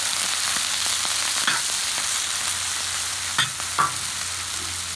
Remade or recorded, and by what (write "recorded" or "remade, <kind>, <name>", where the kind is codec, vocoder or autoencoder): recorded